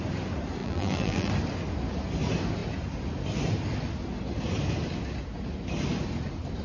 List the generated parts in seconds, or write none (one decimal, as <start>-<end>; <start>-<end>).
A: 0.6-1.3